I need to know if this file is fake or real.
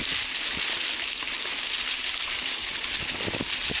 real